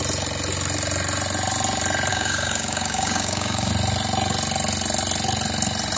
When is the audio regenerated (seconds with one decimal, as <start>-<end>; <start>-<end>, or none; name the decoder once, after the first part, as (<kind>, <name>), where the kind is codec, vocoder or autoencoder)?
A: 2.1-3.7 (codec, DAC)